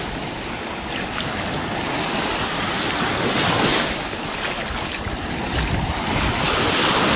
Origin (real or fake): real